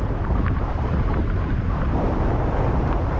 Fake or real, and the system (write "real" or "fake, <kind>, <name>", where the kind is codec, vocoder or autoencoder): real